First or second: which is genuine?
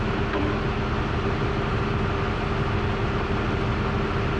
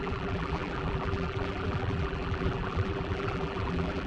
first